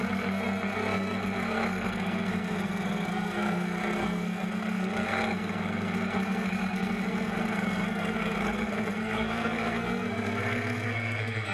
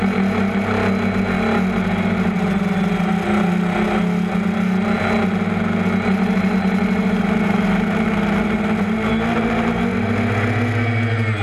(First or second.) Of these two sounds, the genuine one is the second